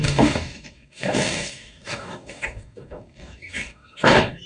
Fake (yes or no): yes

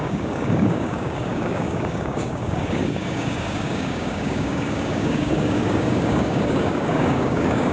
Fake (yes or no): yes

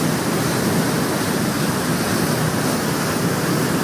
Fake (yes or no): no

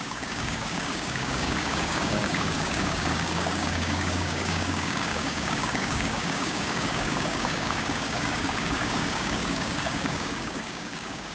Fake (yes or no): yes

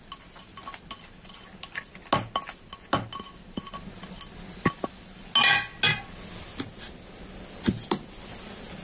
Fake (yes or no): no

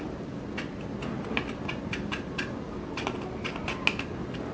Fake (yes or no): no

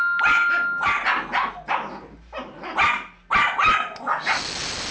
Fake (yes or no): no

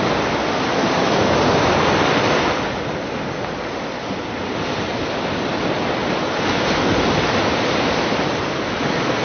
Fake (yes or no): no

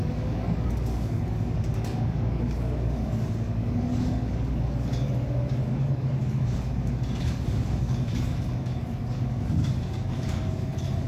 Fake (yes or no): yes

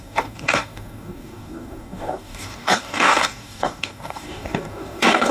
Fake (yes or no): yes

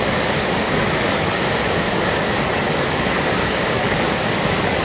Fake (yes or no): yes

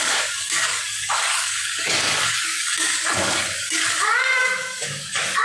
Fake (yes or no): yes